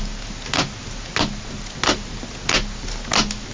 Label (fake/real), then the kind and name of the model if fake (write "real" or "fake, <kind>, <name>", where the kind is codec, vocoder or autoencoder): real